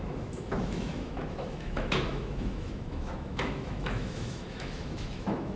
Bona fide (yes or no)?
no